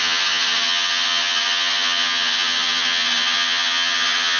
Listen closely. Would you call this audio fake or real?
fake